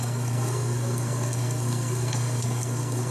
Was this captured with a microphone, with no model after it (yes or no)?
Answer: no